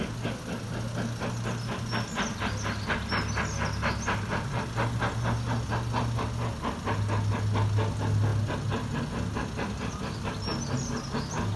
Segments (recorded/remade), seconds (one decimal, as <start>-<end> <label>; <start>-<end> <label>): 0.0-11.6 recorded